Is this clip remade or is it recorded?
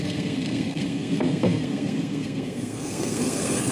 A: remade